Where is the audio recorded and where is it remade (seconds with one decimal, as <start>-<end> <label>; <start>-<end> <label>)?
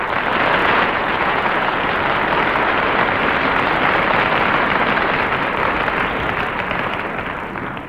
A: 0.0-0.6 recorded; 0.6-1.9 remade; 1.9-7.9 recorded